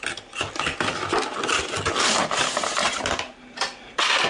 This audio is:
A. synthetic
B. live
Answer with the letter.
B